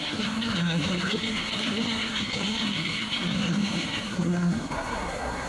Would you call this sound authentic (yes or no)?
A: no